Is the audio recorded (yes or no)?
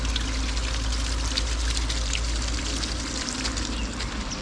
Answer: yes